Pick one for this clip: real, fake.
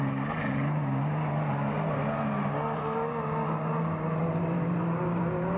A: real